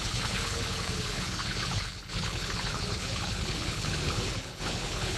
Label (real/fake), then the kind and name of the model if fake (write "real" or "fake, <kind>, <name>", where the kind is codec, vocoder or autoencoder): fake, codec, HILCodec